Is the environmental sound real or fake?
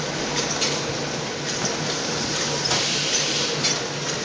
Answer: real